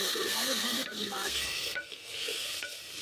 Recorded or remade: remade